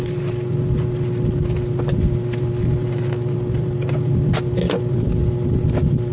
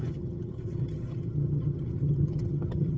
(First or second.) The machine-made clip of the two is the second